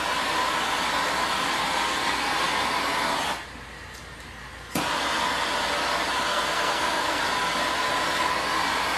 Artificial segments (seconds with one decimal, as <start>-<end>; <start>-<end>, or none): 6.3-7.2